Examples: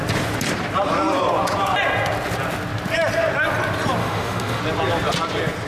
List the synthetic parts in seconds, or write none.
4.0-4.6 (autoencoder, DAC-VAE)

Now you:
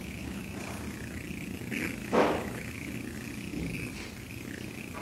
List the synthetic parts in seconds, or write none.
0.0-0.6 (autoencoder, DAC-VAE); 2.0-2.9

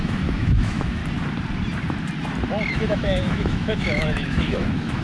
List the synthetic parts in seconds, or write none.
0.0-1.0 (autoencoder, DAC-VAE); 2.7-5.0

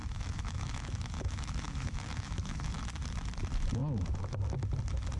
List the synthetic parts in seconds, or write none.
0.0-2.8 (autoencoder, DAC-VAE)

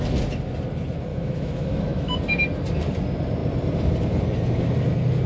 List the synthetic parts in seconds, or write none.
1.1-2.1 (autoencoder, DAC-VAE)

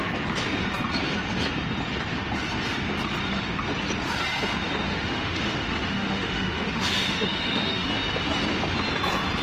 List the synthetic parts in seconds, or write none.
4.9-7.9 (autoencoder, DAC-VAE)